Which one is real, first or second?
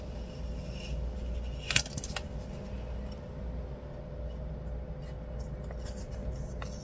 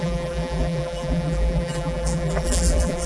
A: first